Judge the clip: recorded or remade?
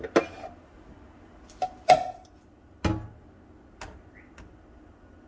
recorded